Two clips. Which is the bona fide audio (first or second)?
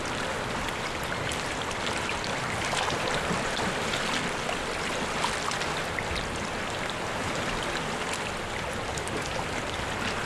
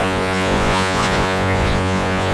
first